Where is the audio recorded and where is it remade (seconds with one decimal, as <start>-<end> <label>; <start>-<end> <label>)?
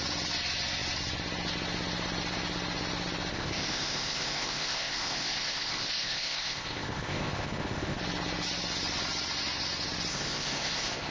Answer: 0.0-3.3 recorded; 3.3-8.0 remade; 8.0-10.1 recorded; 10.1-11.1 remade